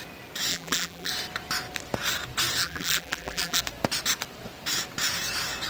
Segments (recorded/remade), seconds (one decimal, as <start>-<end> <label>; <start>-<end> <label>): 0.0-0.5 recorded; 0.5-1.1 remade; 1.1-2.6 recorded; 2.6-3.6 remade; 3.6-5.7 recorded